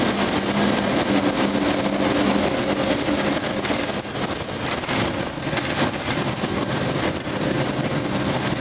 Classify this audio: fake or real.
real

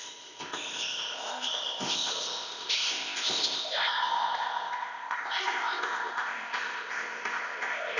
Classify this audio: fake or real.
fake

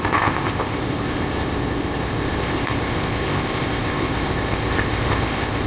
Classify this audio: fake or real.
fake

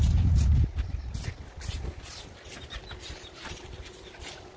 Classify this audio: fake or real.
real